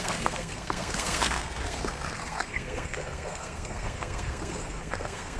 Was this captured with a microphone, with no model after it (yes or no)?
no